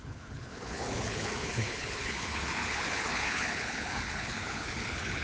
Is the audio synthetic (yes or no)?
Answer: yes